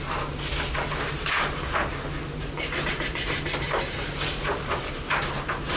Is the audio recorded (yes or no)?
no